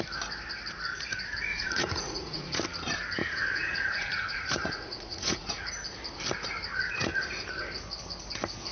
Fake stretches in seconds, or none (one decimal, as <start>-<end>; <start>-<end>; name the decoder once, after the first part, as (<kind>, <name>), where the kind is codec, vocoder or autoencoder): 1.5-2.6 (vocoder, Vocos); 3.2-5.7